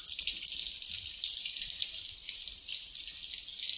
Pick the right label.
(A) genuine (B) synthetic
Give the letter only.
A